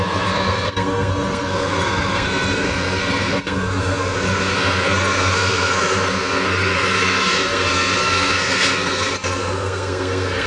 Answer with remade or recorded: remade